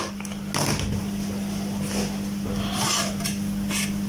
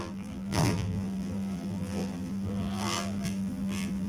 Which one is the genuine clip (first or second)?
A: first